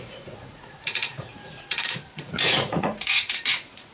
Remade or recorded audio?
remade